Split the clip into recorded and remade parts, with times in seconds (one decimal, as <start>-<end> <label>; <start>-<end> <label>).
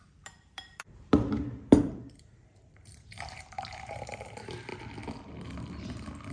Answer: 0.0-4.7 remade; 4.7-6.3 recorded